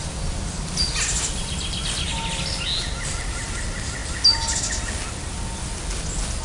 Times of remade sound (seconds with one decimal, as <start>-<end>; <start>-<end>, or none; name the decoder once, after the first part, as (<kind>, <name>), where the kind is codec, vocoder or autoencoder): none